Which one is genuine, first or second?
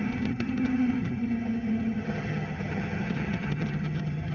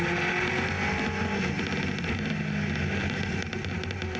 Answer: second